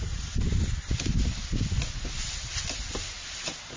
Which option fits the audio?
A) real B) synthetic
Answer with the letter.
A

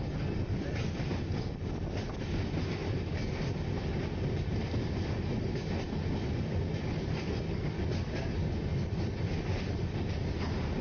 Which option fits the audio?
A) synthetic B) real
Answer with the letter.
B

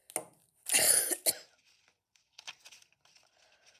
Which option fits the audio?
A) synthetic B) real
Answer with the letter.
B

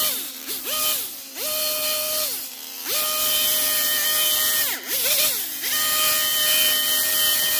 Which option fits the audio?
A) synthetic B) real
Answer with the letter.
A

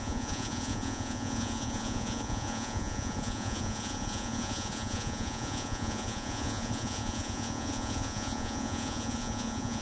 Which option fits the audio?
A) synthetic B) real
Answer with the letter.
A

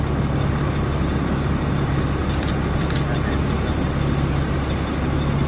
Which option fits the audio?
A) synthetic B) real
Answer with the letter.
B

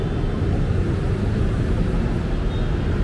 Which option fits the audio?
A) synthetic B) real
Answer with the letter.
B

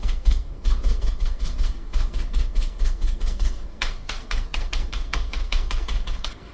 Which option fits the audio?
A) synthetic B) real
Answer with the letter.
A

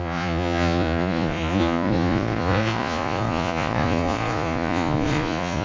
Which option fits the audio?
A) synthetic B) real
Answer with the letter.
A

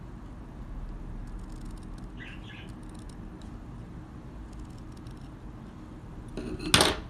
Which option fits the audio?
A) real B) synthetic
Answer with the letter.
A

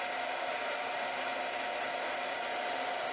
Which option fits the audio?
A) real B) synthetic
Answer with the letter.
A